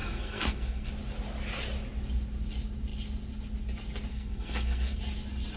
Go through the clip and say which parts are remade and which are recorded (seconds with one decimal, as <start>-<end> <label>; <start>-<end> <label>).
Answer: 0.0-0.9 remade; 0.9-4.1 recorded; 4.1-5.0 remade; 5.0-5.6 recorded